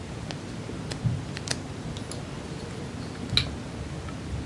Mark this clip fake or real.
real